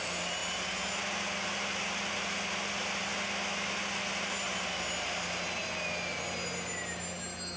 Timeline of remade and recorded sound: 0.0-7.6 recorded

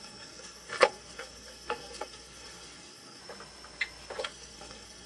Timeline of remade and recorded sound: 0.0-3.2 remade; 3.2-4.2 recorded; 4.2-5.1 remade

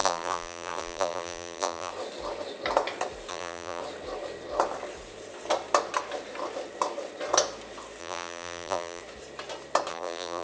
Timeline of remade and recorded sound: 0.0-1.9 remade; 1.9-3.3 recorded; 3.3-3.8 remade; 3.8-8.0 recorded; 8.0-9.0 remade; 9.0-9.9 recorded; 9.9-10.4 remade

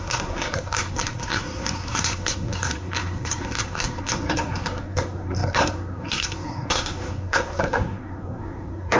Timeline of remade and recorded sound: 0.0-9.0 remade

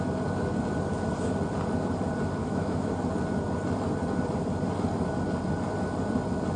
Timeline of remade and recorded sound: 0.0-2.4 recorded; 2.4-2.9 remade; 2.9-6.6 recorded

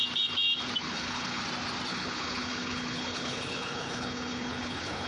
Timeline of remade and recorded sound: 0.0-0.8 recorded; 0.8-1.4 remade; 1.4-1.9 recorded; 1.9-5.1 remade

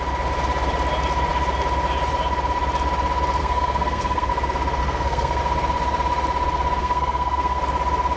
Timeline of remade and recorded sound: 0.0-3.4 recorded; 3.4-4.3 remade; 4.3-4.8 recorded; 4.8-5.4 remade; 5.4-6.8 recorded; 6.8-7.6 remade; 7.6-8.2 recorded